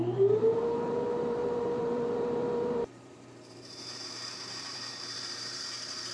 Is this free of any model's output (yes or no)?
no